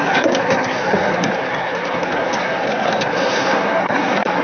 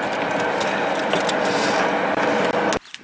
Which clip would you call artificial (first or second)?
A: first